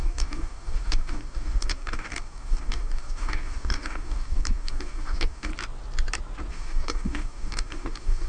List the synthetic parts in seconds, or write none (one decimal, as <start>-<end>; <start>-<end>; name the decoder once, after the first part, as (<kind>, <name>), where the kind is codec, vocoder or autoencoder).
0.0-5.5 (codec, DAC); 6.5-8.3